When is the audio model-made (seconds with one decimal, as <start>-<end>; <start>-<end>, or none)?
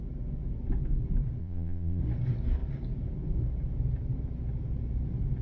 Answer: 1.4-2.0